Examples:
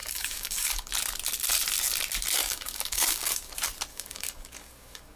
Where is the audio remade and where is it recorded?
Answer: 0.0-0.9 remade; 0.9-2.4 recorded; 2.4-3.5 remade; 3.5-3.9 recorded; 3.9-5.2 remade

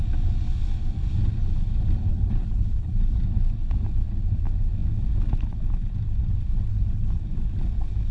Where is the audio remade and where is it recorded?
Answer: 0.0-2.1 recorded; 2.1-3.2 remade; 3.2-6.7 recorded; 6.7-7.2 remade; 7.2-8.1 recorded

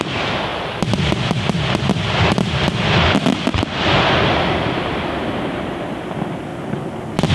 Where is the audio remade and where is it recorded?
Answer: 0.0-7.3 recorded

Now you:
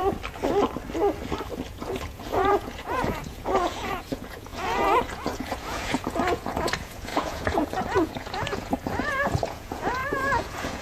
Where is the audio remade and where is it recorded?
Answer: 0.0-1.7 recorded; 1.7-10.8 remade

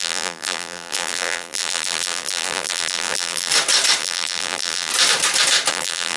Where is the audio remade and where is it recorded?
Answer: 0.0-3.5 remade; 3.5-4.0 recorded; 4.0-4.9 remade; 4.9-5.7 recorded; 5.7-6.2 remade